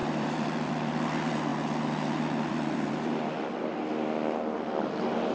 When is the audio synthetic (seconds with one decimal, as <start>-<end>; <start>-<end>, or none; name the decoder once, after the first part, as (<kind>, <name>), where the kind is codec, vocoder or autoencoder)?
0.0-1.5 (vocoder, BigVGAN v2); 2.5-3.7; 4.7-5.3